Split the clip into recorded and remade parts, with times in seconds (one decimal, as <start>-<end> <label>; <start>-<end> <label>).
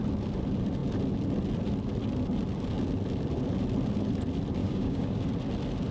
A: 0.0-4.6 recorded; 4.6-5.2 remade; 5.2-5.9 recorded